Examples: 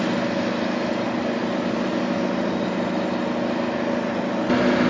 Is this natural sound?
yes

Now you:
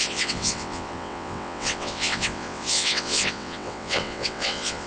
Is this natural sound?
no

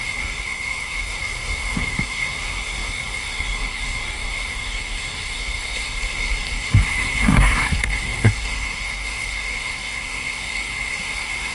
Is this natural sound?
no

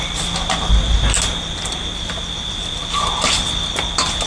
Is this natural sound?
yes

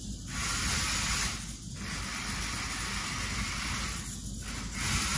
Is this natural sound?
yes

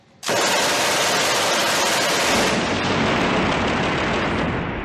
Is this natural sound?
yes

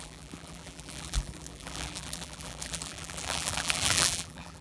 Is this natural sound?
no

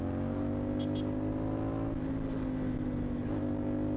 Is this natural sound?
yes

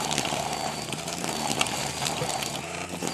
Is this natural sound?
no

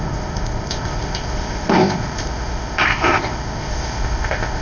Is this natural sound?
no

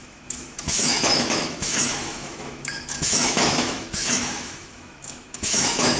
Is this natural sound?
no